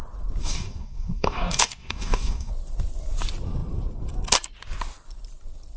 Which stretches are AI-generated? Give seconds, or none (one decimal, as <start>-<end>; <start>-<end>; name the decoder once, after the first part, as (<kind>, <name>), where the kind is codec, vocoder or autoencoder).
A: 0.4-2.5 (codec, DAC)